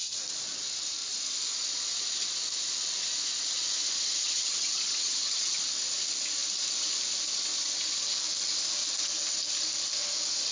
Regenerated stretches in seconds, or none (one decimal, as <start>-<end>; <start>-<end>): 4.2-5.6